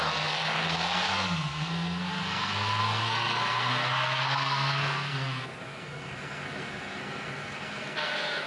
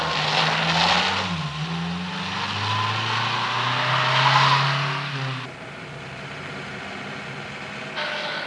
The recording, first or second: second